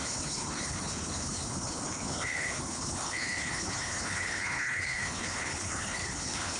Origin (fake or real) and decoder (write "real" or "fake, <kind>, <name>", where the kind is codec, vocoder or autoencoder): fake, codec, HILCodec